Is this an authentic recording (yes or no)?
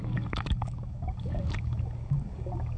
no